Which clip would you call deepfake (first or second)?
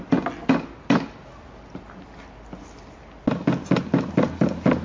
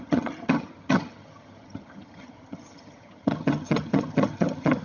second